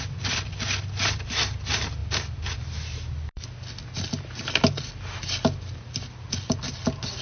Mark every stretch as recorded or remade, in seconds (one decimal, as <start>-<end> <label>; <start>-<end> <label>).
0.0-7.2 recorded

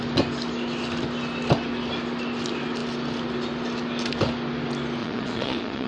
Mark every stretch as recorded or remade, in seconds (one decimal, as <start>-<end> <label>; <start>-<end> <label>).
0.0-5.0 recorded; 5.0-5.9 remade

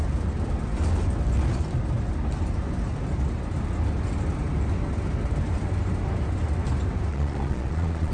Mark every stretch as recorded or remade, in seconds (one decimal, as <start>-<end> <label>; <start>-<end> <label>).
0.0-7.1 recorded; 7.1-8.1 remade

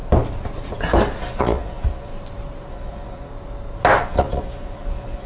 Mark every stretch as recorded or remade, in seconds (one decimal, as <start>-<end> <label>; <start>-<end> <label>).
0.0-1.2 recorded; 1.2-2.1 remade; 2.1-2.7 recorded; 2.7-3.3 remade; 3.3-4.0 recorded; 4.0-5.3 remade

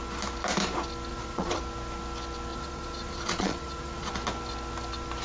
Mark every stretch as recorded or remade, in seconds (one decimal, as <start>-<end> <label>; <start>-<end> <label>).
0.0-1.1 recorded; 1.1-1.6 remade; 1.6-2.5 recorded; 2.5-4.1 remade; 4.1-5.2 recorded

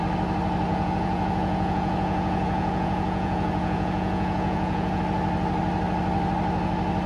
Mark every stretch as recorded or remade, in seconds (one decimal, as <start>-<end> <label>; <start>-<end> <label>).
0.0-0.7 recorded; 0.7-5.0 remade; 5.0-7.1 recorded

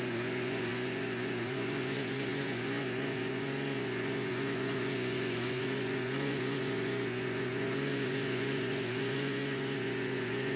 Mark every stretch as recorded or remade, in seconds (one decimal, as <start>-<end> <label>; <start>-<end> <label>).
0.0-10.6 remade

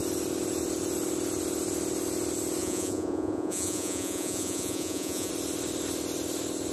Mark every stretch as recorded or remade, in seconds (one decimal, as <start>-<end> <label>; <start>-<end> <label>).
0.0-2.6 recorded; 2.6-5.3 remade; 5.3-6.7 recorded